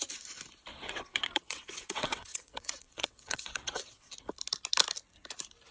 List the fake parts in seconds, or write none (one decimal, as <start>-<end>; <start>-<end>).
0.7-4.1